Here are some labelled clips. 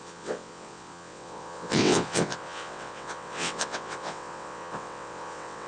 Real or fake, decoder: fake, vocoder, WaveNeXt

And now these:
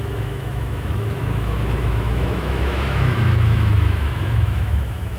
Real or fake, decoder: fake, autoencoder, DAC-VAE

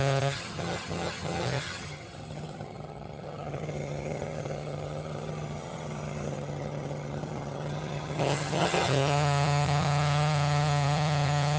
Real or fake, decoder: fake, vocoder, HiFi-GAN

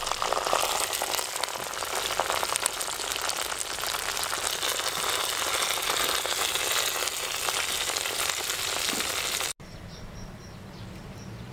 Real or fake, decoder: real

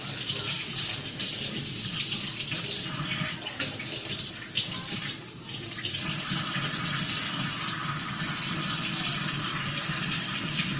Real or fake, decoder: real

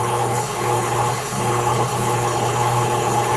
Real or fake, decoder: fake, codec, HILCodec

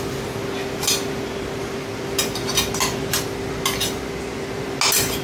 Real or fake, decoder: real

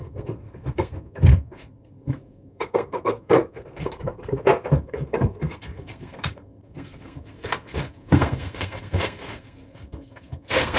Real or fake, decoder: fake, codec, SNAC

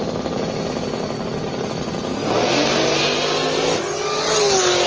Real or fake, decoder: real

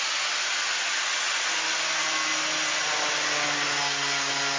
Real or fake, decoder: real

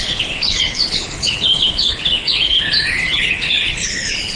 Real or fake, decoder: fake, codec, HILCodec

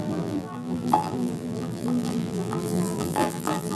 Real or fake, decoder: fake, vocoder, BigVGAN v2